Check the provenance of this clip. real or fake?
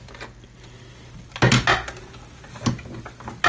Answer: real